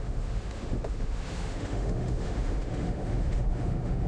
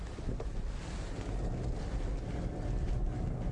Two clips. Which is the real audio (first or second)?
second